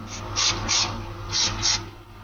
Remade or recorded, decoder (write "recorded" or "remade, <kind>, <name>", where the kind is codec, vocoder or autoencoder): recorded